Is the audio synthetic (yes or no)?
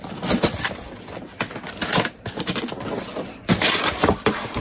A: no